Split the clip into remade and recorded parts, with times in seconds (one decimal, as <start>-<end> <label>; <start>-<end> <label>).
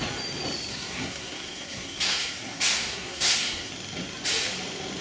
0.0-0.7 recorded; 0.7-3.7 remade; 3.7-5.0 recorded